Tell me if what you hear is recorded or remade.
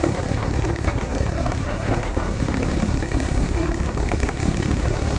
remade